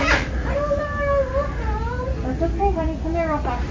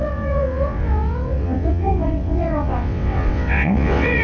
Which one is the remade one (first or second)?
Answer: second